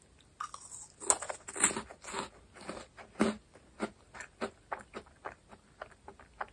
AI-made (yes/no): no